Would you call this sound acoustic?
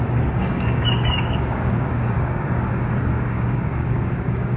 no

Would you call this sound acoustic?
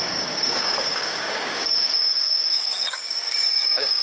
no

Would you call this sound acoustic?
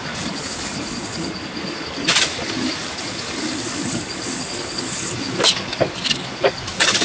no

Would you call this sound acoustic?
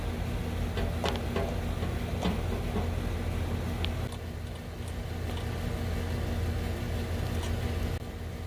yes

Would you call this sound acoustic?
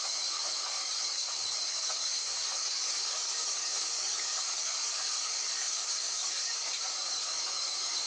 no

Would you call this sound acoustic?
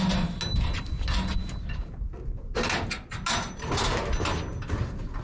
yes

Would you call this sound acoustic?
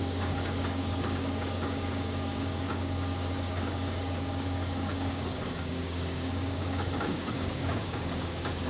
no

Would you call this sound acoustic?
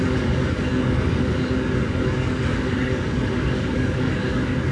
no